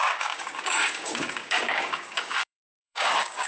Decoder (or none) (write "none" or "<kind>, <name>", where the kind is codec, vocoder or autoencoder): codec, DAC